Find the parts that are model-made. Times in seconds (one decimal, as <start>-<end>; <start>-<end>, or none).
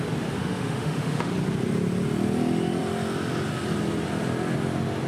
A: 0.4-1.3